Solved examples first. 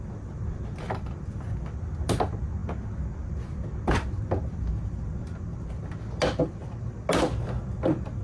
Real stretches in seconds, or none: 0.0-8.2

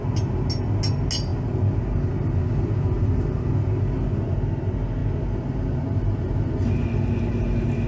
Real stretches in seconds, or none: 0.0-7.9

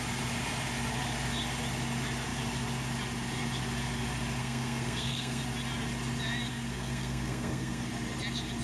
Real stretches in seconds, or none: 0.0-4.4; 5.4-6.5; 7.9-8.6